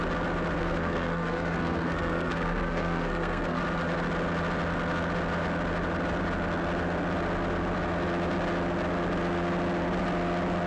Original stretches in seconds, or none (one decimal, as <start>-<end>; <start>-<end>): 0.0-0.6; 3.6-10.7